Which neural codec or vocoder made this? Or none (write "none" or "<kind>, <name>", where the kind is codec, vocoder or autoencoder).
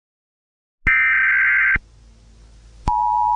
none